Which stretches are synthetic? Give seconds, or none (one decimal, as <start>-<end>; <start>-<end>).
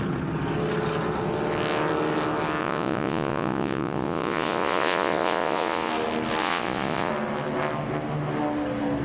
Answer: 2.6-5.9; 6.4-7.1